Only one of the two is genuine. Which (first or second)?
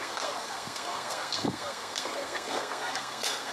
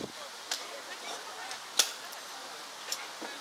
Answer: second